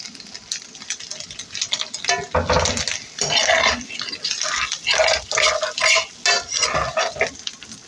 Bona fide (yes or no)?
yes